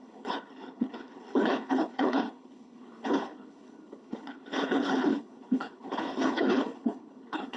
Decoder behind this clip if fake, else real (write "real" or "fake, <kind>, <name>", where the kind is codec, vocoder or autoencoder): fake, codec, HILCodec